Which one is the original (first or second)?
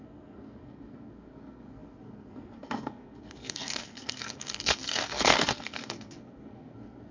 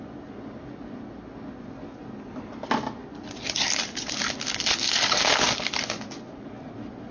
second